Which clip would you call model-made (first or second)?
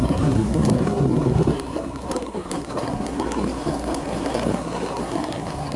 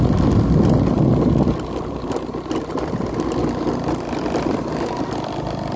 first